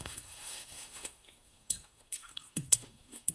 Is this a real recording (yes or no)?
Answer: no